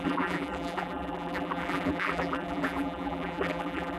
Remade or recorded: remade